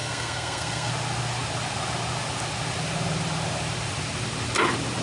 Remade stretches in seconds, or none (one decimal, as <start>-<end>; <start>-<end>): 0.0-0.9